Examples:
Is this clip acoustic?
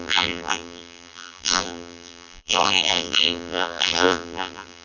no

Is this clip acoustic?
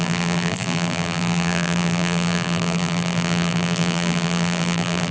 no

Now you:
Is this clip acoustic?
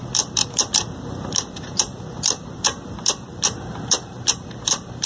no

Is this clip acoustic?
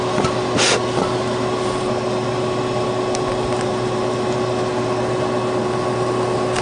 yes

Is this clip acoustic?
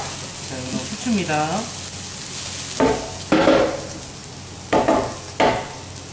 yes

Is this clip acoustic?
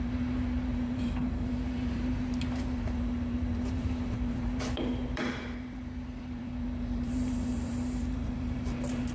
no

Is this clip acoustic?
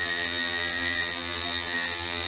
no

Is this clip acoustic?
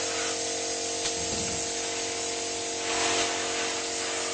yes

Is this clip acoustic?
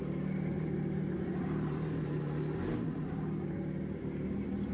yes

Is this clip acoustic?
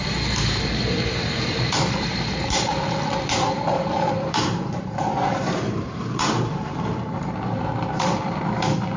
no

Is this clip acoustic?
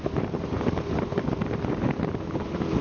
no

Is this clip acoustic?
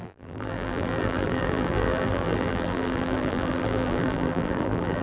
no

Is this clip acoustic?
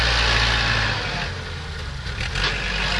yes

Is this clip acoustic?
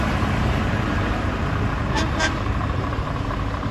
no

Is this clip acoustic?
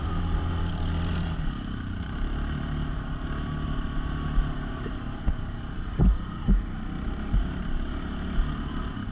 no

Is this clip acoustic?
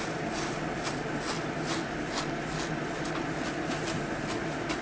yes